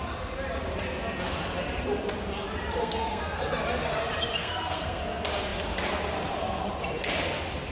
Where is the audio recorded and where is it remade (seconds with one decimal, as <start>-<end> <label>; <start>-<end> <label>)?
0.0-2.8 recorded; 2.8-3.4 remade; 3.4-4.4 recorded; 4.4-5.0 remade; 5.0-7.7 recorded